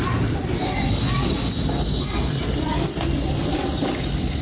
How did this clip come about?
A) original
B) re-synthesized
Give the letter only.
A